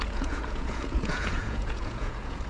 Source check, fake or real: fake